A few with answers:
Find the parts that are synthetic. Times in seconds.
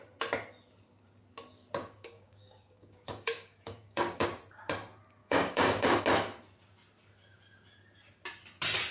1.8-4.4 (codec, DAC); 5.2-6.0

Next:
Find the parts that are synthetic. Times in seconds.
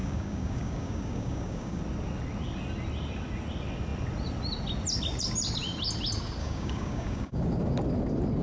0.0-1.8 (codec, DAC); 6.4-7.4